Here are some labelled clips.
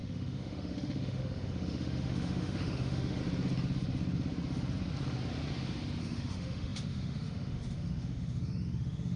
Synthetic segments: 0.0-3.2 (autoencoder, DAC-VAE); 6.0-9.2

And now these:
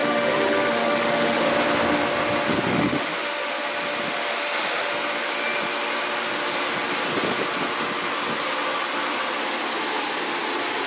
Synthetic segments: 0.0-1.4 (autoencoder, DAC-VAE); 2.7-3.6; 4.2-4.9

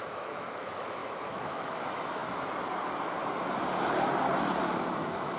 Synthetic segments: 0.0-2.2 (autoencoder, DAC-VAE); 4.6-5.4